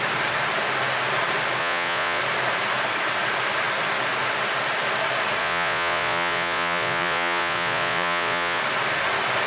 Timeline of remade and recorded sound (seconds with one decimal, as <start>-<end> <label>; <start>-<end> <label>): 0.0-1.6 recorded; 1.6-2.2 remade; 2.2-5.4 recorded; 5.4-8.6 remade; 8.6-9.5 recorded